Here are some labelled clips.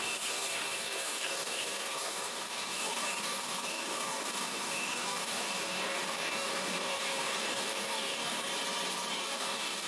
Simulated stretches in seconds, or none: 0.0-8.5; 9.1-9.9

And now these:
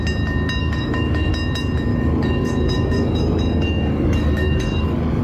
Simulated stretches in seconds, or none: 0.6-1.3; 1.9-5.2

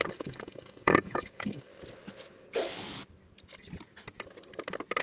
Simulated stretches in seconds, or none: 0.0-1.7

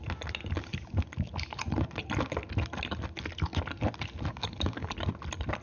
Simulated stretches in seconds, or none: 4.3-4.9

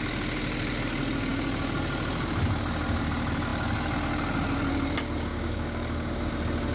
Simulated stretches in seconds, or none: 5.3-6.3